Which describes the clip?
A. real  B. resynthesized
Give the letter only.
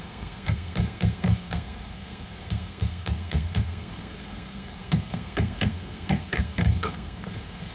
B